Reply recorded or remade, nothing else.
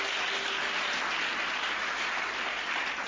recorded